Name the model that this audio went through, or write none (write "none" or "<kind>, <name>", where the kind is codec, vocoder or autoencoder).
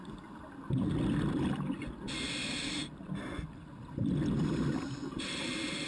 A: none